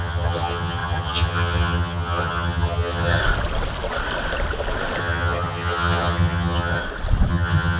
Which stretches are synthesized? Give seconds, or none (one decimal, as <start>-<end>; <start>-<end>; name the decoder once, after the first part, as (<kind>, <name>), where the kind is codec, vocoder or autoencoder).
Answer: 0.0-3.2 (vocoder, HiFi-GAN); 5.0-6.8; 7.3-7.8